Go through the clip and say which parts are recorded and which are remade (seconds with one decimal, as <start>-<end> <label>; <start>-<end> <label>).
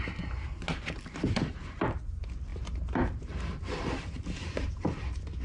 0.0-2.5 recorded; 2.5-4.2 remade; 4.2-5.4 recorded